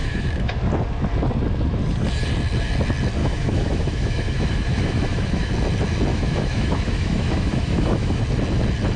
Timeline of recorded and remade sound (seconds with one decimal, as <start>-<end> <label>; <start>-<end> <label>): 0.0-0.6 remade; 0.6-3.2 recorded; 3.2-5.5 remade; 5.5-6.1 recorded; 6.1-8.2 remade; 8.2-9.0 recorded

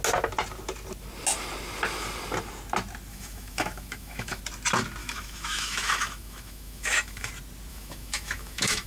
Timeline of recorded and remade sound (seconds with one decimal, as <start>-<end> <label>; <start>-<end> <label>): 0.0-3.1 recorded; 3.1-4.4 remade; 4.4-5.0 recorded; 5.0-7.3 remade; 7.3-7.7 recorded; 7.7-8.9 remade

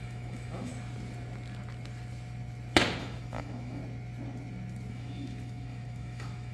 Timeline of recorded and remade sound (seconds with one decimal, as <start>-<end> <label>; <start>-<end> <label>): 0.0-0.7 remade; 0.7-3.0 recorded; 3.0-3.8 remade; 3.8-4.9 recorded; 4.9-6.5 remade

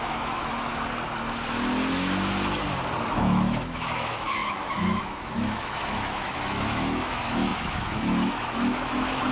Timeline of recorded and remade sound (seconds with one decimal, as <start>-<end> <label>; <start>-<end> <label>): 0.0-0.7 remade; 0.7-3.1 recorded; 3.1-9.3 remade

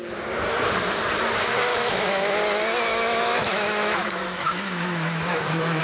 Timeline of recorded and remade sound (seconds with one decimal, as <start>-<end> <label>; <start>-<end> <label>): 0.0-1.7 recorded; 1.7-2.3 remade; 2.3-2.9 recorded; 2.9-5.8 remade